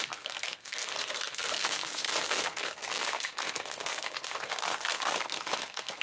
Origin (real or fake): fake